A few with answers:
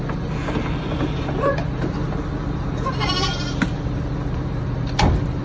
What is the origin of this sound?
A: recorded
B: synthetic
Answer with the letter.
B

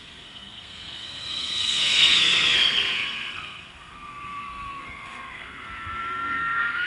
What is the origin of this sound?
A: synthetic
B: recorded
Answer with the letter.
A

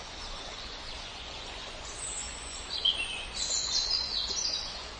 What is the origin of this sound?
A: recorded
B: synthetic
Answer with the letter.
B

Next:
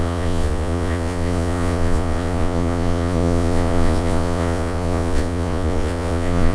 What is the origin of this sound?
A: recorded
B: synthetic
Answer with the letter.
B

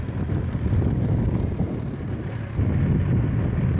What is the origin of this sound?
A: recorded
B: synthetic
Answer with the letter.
A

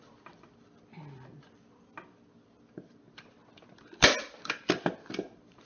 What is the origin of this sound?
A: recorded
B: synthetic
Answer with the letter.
B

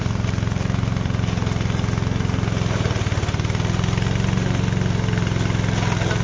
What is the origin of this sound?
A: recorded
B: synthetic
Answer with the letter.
A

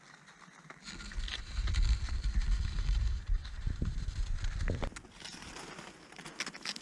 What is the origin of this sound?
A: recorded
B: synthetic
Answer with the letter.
A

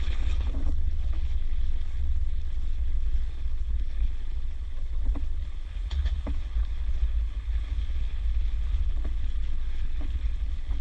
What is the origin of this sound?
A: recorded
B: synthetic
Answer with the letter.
B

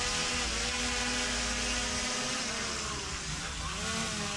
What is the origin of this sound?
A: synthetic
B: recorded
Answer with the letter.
B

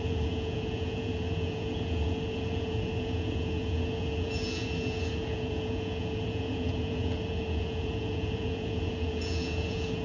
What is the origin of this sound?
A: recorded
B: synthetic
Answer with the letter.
B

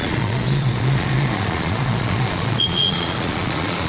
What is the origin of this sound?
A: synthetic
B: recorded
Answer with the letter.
A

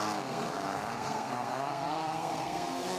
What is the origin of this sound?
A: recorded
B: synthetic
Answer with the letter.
B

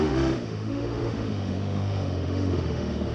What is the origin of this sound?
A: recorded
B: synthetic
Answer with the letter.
B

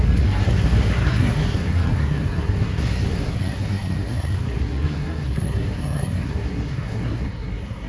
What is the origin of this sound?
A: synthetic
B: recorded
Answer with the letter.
A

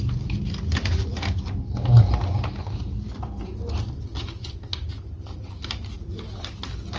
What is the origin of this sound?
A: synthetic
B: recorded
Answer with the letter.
B